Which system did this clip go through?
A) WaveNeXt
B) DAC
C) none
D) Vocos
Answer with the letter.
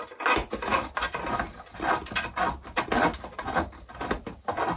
C